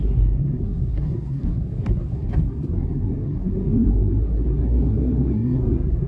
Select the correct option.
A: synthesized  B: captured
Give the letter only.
A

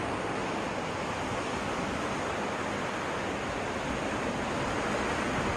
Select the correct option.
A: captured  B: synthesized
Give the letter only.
A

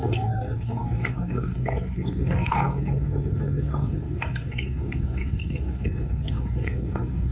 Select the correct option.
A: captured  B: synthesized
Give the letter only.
B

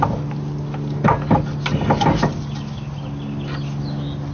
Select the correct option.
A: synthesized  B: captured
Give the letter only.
B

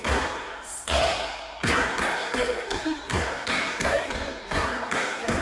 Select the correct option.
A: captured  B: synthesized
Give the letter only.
B